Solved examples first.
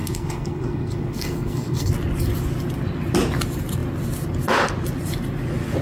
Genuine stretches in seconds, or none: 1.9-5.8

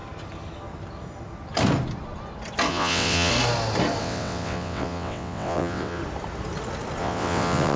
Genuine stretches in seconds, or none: 0.0-2.7; 3.3-4.0; 6.0-7.0

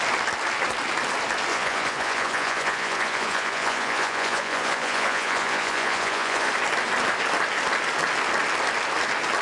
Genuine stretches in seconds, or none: 0.0-1.5; 6.5-9.4

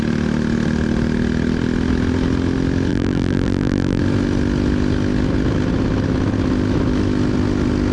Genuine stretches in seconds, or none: 0.0-2.9; 4.0-7.9

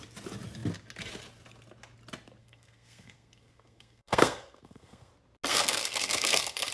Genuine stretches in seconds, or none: 0.0-2.4; 5.1-5.5

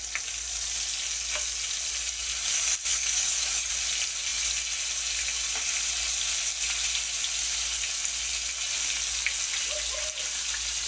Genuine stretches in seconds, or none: 0.0-2.9; 3.7-10.9

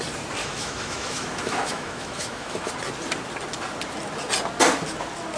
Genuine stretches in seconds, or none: 0.0-0.4; 2.7-5.4

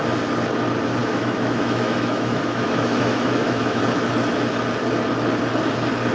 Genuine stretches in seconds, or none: 0.0-1.0; 3.8-6.1